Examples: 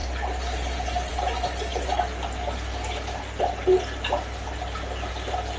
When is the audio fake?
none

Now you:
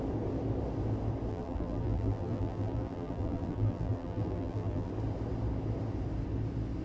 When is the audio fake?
1.3-4.9

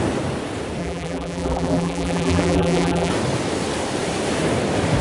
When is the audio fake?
0.8-3.1

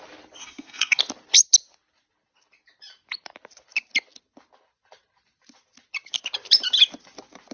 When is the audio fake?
0.4-1.0

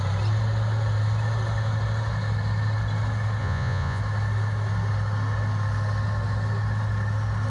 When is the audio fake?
3.4-4.0

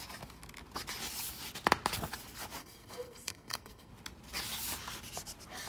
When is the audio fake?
2.6-3.9

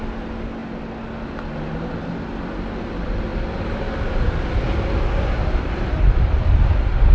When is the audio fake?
3.3-7.1

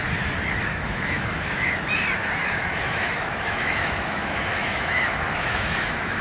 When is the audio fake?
0.7-1.7; 2.4-6.2